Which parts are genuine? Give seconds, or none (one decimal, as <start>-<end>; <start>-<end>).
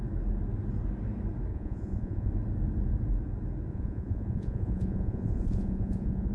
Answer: 0.0-1.5; 2.3-3.7